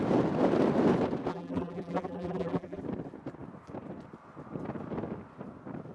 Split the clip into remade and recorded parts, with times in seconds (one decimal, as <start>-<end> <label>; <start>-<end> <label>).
0.0-1.3 recorded; 1.3-2.8 remade; 2.8-5.9 recorded